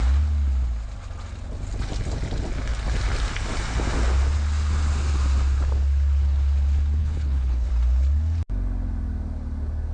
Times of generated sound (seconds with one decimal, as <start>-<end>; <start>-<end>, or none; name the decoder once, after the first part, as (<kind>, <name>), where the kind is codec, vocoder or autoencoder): 7.0-7.7 (codec, HILCodec)